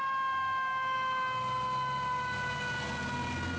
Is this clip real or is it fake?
real